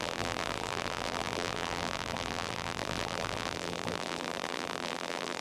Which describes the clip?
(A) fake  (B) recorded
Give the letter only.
A